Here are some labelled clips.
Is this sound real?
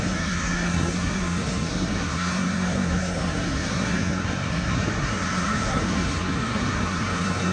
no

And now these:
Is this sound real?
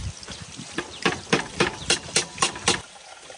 yes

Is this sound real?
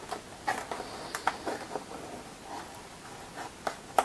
yes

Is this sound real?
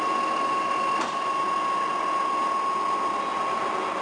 yes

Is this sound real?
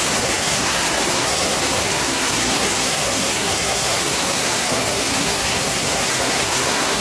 no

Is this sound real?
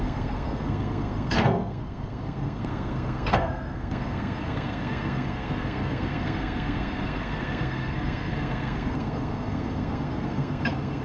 no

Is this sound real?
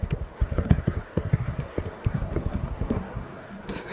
no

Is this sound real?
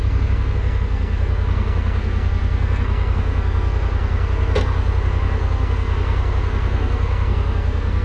no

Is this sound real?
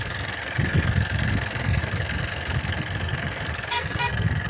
no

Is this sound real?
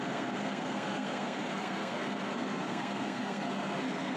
no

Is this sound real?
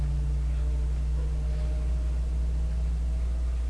yes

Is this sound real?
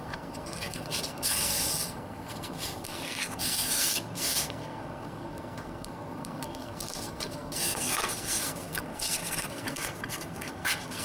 no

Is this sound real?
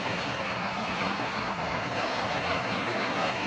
no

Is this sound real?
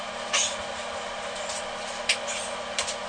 yes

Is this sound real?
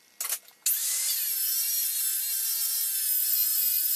yes